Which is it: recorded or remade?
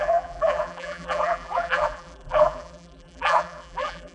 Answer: remade